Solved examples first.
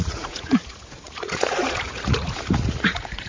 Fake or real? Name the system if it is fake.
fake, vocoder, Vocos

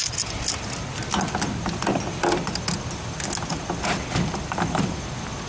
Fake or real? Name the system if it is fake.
real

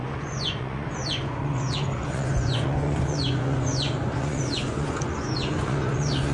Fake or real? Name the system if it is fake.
fake, vocoder, Vocos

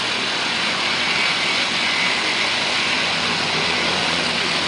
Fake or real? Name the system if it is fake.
fake, vocoder, Vocos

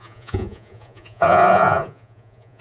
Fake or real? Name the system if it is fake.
fake, vocoder, Vocos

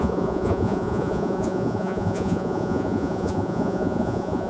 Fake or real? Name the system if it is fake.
fake, vocoder, Vocos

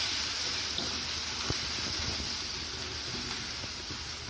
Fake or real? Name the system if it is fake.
real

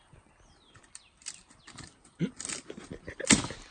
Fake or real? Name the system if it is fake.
real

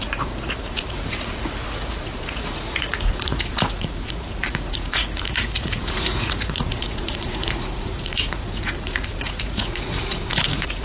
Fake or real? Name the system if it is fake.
fake, vocoder, Vocos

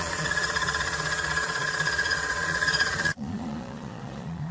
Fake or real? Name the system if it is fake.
fake, vocoder, Vocos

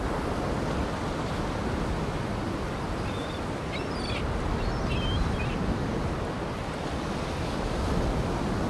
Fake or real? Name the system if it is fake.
real